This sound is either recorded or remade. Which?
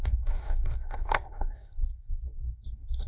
remade